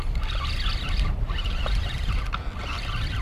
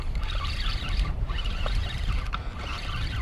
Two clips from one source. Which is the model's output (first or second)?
second